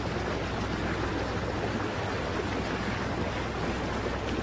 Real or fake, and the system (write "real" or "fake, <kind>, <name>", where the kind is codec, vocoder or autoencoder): real